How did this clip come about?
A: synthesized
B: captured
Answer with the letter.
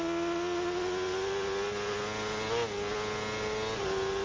B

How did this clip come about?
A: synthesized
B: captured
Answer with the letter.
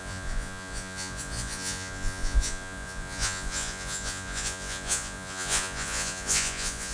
A